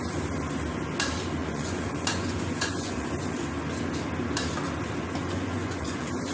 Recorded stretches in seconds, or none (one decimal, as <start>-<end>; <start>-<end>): 0.0-1.4; 3.1-5.2